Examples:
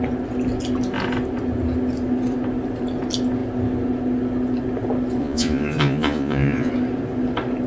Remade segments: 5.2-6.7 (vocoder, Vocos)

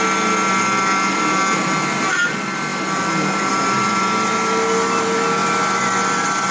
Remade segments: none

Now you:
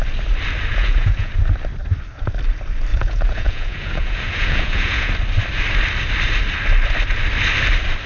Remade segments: 0.7-1.3 (vocoder, Vocos); 2.9-5.1

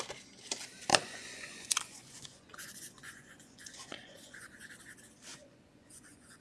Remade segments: 0.9-4.7 (vocoder, Vocos); 5.3-6.4

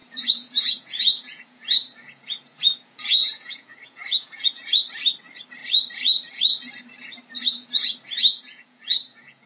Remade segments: 0.0-4.9 (vocoder, Vocos); 8.3-9.5

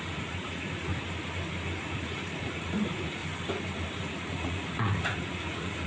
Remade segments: 0.0-0.9 (vocoder, Vocos); 1.8-3.2; 4.0-5.9

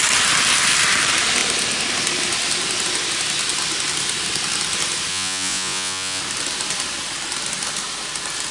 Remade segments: 5.1-6.2 (vocoder, Vocos)

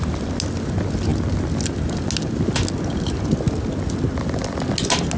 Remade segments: none